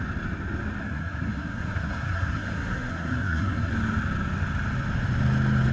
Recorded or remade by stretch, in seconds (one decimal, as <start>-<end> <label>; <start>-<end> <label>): 0.0-0.8 recorded; 0.8-3.7 remade; 3.7-5.7 recorded